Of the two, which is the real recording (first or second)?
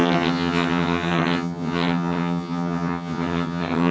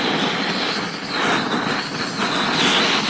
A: second